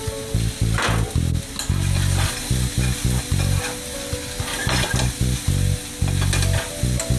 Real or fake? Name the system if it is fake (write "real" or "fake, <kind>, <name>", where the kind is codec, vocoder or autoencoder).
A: real